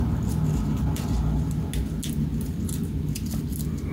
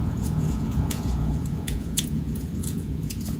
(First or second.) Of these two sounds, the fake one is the second